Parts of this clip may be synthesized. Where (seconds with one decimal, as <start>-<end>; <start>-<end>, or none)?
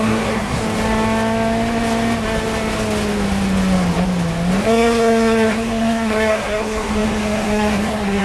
0.0-0.6; 4.6-8.2